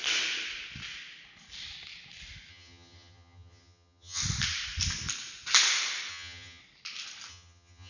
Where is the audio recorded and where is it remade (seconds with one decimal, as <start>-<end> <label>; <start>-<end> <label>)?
0.0-2.5 recorded; 2.5-4.2 remade; 4.2-6.1 recorded; 6.1-6.6 remade; 6.6-7.3 recorded; 7.3-7.9 remade